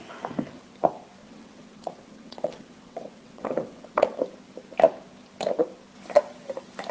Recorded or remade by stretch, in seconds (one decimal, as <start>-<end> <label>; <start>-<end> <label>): 0.0-1.2 recorded; 1.2-4.2 remade; 4.2-6.9 recorded